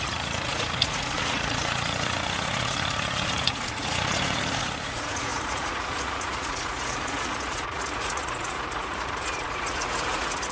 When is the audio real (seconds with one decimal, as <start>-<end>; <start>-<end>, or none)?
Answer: none

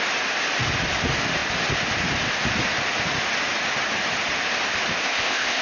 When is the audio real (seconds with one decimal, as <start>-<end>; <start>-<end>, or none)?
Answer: 0.0-5.0

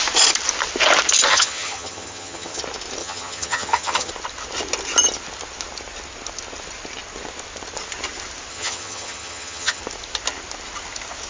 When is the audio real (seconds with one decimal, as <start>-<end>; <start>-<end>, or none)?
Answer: 0.0-1.3; 2.6-3.0; 4.1-8.5; 9.8-11.3

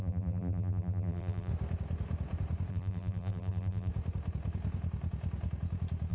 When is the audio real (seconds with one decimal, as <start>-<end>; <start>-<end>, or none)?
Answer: 1.5-2.7; 3.9-6.1